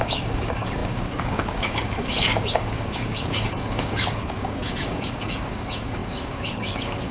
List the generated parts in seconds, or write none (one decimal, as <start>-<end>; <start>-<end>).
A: 0.0-7.1